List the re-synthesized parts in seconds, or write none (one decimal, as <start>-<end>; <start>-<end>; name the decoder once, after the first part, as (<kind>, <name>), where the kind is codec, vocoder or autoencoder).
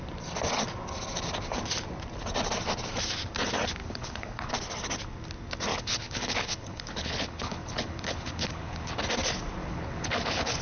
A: 3.8-4.5 (codec, HILCodec); 5.7-9.0; 9.6-10.6